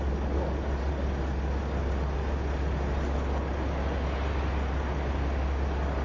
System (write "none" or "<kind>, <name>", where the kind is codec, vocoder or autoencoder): none